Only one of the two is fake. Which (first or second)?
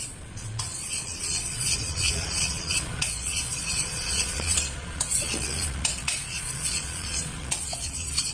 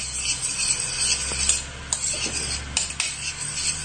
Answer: first